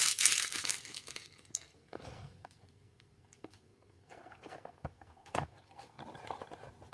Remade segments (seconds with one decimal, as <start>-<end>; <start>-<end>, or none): 0.0-6.0